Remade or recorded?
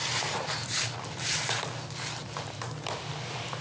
recorded